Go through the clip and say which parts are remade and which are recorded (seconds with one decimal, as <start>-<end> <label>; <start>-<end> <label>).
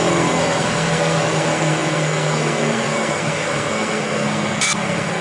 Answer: 0.0-5.2 remade